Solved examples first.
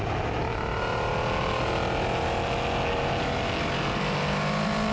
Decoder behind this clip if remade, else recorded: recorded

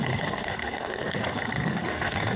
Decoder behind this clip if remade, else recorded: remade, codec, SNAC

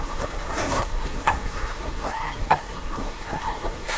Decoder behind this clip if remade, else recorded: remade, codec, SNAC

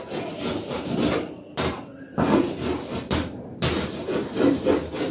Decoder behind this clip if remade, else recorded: remade, vocoder, BigVGAN v2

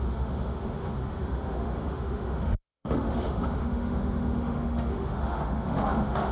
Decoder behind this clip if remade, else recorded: remade, autoencoder, DAC-VAE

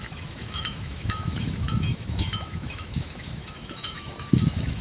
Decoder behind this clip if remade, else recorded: remade, autoencoder, DAC-VAE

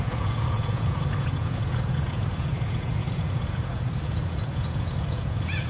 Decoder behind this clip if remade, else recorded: remade, vocoder, Vocos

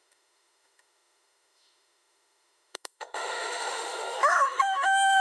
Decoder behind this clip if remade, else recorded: remade, autoencoder, DAC-VAE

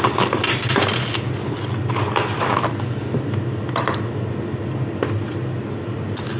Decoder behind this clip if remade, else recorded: recorded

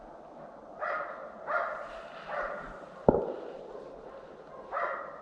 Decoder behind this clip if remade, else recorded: recorded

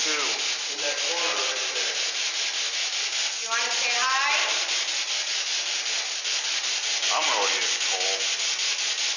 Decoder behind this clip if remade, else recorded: recorded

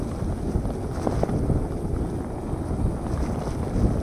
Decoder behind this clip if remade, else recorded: recorded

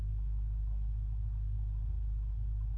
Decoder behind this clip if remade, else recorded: recorded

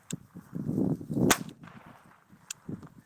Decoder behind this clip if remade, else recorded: recorded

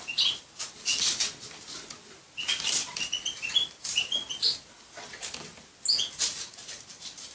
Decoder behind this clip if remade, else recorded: recorded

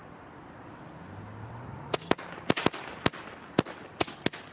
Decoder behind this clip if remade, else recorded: recorded